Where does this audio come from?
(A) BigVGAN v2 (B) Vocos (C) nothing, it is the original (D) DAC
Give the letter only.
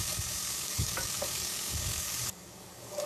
D